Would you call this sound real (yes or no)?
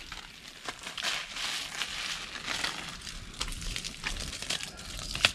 yes